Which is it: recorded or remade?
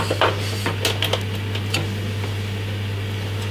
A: recorded